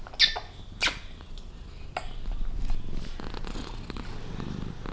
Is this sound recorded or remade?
recorded